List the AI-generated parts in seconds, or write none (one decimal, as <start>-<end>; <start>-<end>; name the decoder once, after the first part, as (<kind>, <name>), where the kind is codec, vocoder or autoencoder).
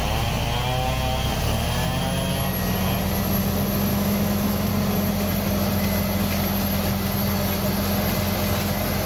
3.9-4.7 (autoencoder, DAC-VAE)